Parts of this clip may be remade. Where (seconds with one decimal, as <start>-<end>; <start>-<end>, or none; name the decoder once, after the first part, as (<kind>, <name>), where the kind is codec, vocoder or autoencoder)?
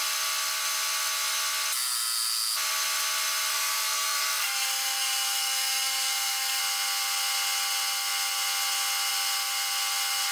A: 3.5-6.6 (codec, SNAC)